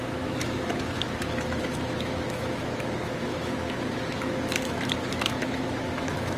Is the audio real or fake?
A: fake